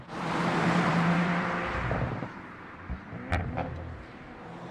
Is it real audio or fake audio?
fake